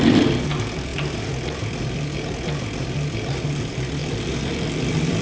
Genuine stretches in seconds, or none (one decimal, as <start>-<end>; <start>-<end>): 0.0-0.9; 3.4-4.0